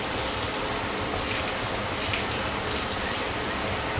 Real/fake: real